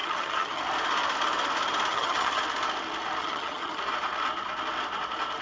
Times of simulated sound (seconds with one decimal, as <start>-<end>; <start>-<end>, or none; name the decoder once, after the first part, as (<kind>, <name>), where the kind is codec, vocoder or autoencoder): 0.0-0.6 (vocoder, HiFi-GAN); 1.9-2.4; 3.2-3.8